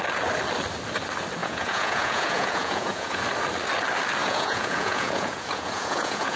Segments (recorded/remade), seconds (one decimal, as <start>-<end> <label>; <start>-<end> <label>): 0.0-1.4 recorded; 1.4-3.2 remade; 3.2-4.2 recorded; 4.2-6.4 remade